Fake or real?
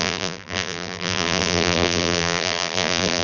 fake